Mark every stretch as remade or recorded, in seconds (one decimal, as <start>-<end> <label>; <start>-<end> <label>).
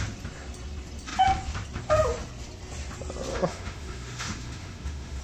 0.0-3.3 recorded; 3.3-5.2 remade